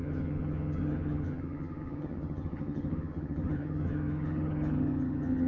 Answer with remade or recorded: remade